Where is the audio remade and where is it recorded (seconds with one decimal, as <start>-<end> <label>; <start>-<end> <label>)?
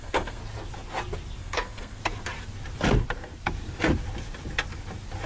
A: 0.0-0.4 remade; 0.4-1.4 recorded; 1.4-2.0 remade; 2.0-5.3 recorded